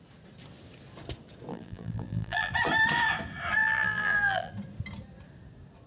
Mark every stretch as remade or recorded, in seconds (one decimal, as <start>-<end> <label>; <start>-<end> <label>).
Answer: 0.0-1.5 recorded; 1.5-2.5 remade; 2.5-3.6 recorded; 3.6-4.5 remade; 4.5-5.9 recorded